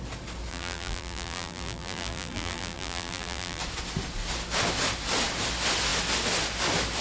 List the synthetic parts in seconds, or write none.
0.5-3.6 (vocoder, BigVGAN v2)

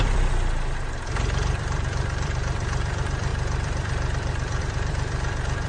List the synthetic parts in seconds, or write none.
0.0-5.7 (vocoder, BigVGAN v2)

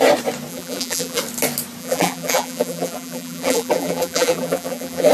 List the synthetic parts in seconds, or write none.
0.5-1.2 (vocoder, BigVGAN v2); 1.8-5.1

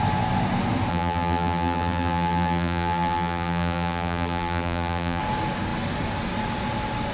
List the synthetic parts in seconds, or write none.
0.9-5.2 (vocoder, BigVGAN v2)

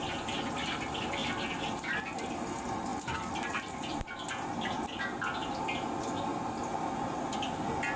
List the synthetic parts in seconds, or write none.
none

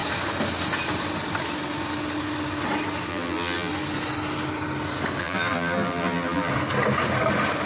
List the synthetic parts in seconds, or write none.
3.1-3.7 (vocoder, BigVGAN v2); 5.2-6.5